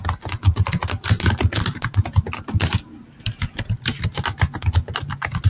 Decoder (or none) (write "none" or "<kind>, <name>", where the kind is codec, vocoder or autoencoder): none